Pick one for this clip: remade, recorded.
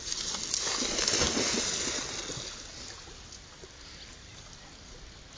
recorded